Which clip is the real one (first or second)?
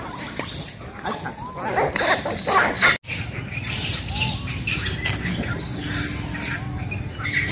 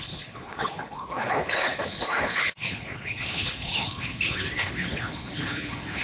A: first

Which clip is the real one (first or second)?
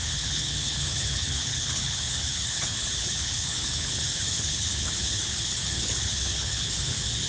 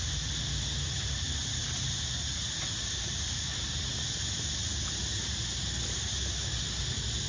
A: second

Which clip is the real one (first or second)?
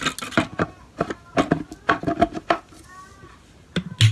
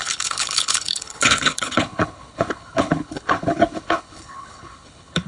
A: first